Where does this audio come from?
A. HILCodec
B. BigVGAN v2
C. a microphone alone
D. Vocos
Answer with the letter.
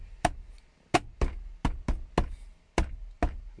C